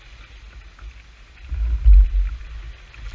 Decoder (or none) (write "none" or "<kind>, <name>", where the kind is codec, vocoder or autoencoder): none